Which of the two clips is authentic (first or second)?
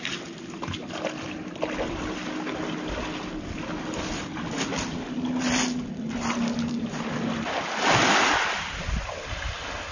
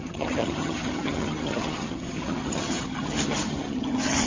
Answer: first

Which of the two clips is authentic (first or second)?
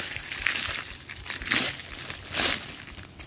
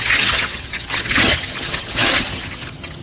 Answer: first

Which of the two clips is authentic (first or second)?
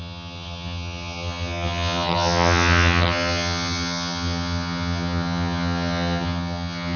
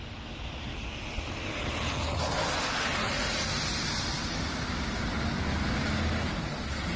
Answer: second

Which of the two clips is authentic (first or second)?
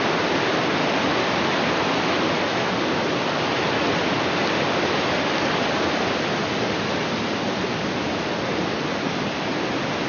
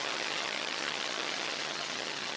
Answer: first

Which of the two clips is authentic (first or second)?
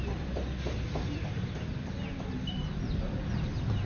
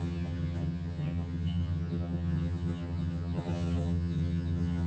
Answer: first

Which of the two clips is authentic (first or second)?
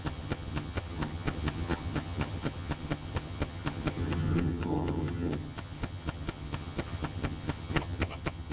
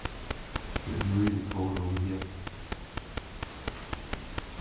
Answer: second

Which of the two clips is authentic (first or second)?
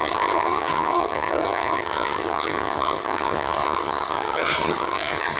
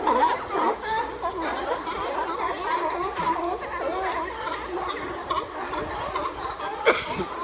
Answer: second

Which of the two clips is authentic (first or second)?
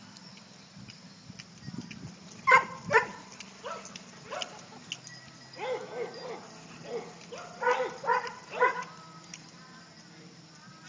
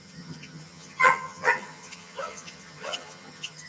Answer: first